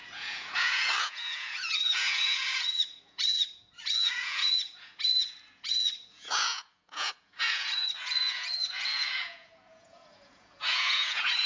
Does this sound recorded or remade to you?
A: remade